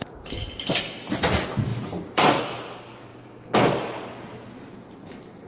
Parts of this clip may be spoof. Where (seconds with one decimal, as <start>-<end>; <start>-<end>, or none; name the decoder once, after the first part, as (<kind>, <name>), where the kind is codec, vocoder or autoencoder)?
1.7-2.4 (vocoder, BigVGAN v2)